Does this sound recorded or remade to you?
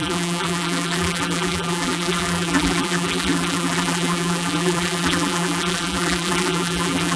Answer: remade